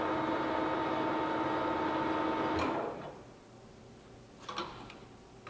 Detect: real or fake real